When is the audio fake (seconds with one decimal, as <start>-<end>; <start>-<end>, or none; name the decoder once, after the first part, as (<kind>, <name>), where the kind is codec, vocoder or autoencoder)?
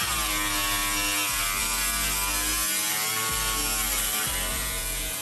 4.5-5.2 (vocoder, Vocos)